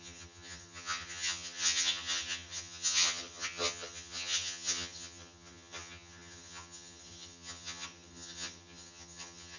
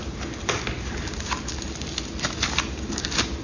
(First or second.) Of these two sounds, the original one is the second